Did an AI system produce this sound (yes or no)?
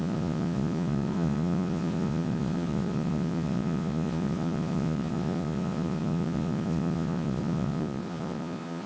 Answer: yes